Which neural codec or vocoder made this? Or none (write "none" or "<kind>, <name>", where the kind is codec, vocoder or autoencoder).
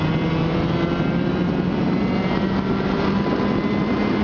none